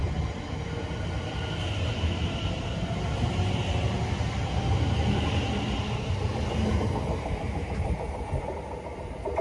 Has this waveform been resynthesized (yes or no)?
no